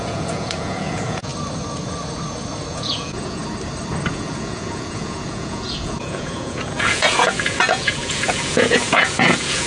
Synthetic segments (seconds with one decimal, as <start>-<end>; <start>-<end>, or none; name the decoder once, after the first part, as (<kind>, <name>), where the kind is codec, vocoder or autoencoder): 0.0-1.3 (vocoder, Vocos); 2.7-3.4; 4.1-9.7